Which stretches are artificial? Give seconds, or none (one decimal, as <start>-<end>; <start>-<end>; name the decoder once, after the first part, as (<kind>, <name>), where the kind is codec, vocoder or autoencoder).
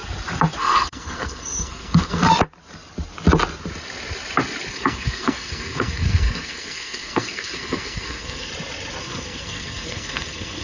0.6-2.2 (codec, SNAC); 4.7-8.5; 9.0-10.6